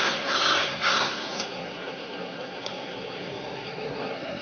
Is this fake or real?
fake